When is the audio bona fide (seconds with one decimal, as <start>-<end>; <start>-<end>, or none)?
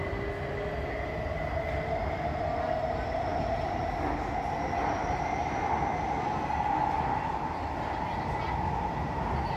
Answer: 0.0-9.6